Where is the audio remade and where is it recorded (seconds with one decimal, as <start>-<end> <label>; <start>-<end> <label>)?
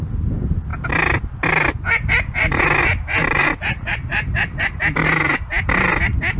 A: 0.0-3.2 recorded; 3.2-4.8 remade; 4.8-6.4 recorded